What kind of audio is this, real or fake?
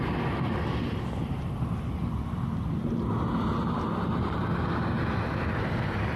real